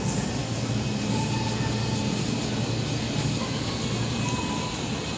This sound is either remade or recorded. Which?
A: recorded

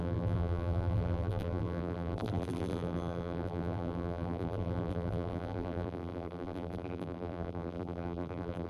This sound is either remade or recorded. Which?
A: remade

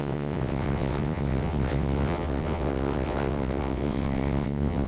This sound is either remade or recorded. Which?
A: remade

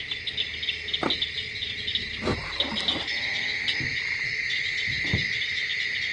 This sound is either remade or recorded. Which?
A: recorded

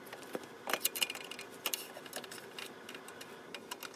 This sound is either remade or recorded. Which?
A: recorded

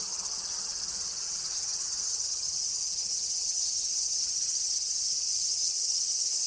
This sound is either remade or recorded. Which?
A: remade